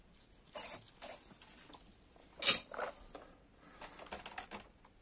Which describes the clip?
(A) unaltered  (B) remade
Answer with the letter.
A